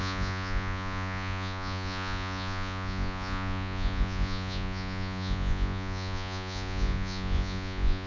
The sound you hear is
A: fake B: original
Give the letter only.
A